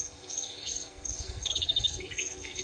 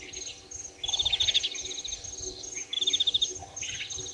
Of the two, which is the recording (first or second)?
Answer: second